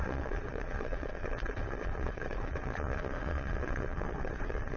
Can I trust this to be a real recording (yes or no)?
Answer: no